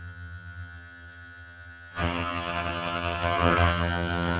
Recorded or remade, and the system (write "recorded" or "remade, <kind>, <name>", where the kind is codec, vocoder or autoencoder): remade, vocoder, HiFi-GAN